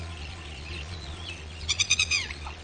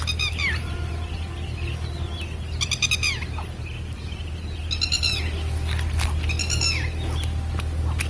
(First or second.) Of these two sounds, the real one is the second